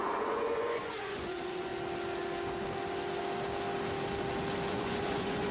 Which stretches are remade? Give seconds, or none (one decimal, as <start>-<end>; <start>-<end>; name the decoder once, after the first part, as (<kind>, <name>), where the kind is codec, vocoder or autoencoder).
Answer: 0.0-1.7 (vocoder, Vocos); 4.7-5.5